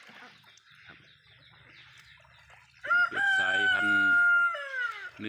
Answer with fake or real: real